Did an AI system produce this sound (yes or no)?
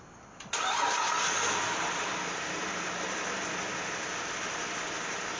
no